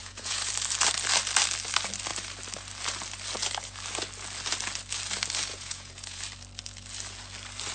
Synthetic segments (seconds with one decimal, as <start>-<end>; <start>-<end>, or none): 0.0-0.5; 5.5-6.2